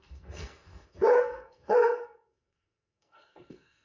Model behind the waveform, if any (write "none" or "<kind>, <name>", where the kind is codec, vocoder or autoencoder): codec, SNAC